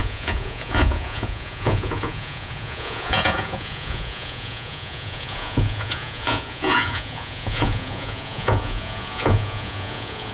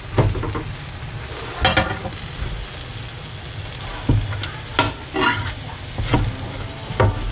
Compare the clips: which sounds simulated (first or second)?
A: first